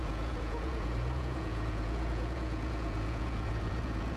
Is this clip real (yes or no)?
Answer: no